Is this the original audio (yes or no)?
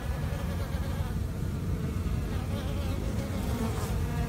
yes